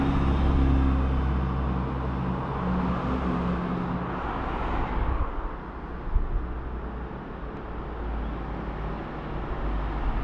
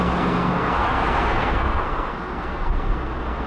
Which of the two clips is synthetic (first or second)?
second